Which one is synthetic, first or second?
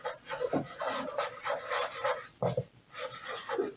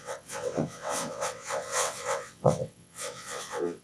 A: second